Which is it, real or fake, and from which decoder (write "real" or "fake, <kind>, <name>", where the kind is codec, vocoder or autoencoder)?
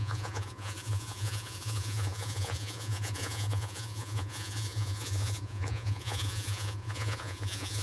fake, vocoder, Vocos